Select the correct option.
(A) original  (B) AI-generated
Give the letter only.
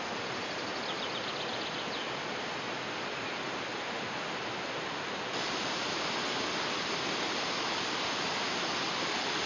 A